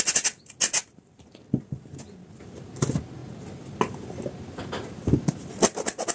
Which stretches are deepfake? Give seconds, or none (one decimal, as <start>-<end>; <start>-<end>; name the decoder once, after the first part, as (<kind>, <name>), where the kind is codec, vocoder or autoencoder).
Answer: none